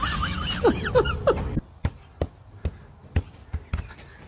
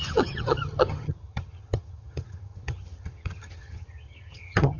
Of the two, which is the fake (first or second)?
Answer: second